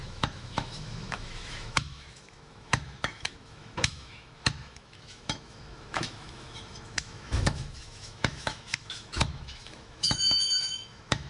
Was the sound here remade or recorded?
remade